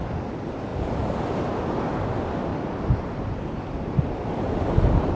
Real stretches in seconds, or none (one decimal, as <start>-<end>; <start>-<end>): 0.0-5.2